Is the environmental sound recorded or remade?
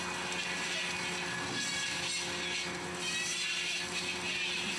recorded